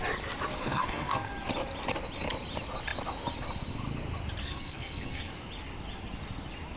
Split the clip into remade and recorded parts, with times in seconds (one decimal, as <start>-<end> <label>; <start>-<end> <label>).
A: 0.0-0.6 recorded; 0.6-1.3 remade; 1.3-4.4 recorded; 4.4-5.3 remade; 5.3-6.8 recorded